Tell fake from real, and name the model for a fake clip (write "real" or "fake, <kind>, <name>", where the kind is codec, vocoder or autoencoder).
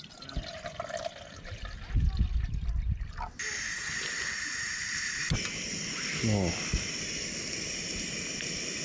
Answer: real